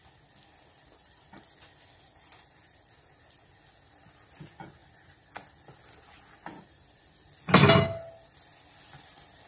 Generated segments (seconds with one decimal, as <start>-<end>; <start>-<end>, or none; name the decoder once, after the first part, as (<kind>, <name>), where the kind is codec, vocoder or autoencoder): none